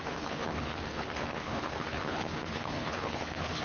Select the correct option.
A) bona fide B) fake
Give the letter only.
B